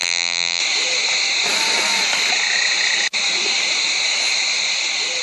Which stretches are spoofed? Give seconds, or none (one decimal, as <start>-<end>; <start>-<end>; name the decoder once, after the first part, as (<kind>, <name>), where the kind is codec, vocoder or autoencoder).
0.0-0.6 (vocoder, BigVGAN v2)